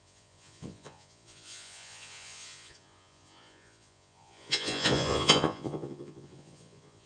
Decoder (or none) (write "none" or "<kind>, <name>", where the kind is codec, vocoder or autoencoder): vocoder, Vocos